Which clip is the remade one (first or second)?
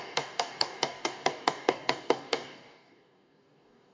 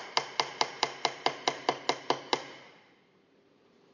first